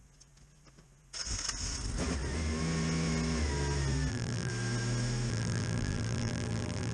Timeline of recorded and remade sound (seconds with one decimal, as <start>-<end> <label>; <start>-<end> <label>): 0.0-4.1 recorded; 4.1-4.5 remade; 4.5-5.3 recorded; 5.3-6.9 remade